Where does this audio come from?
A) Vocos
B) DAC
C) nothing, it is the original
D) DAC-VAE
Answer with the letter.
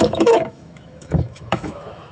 D